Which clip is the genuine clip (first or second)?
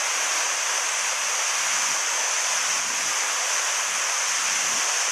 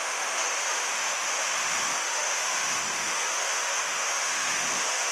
first